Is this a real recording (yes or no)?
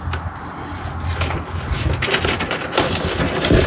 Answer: yes